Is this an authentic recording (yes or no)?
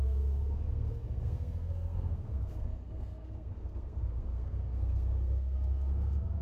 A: no